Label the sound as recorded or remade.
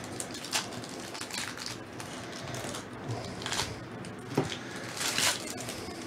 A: recorded